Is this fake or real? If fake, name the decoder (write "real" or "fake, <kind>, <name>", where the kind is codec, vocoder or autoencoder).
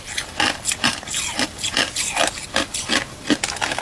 real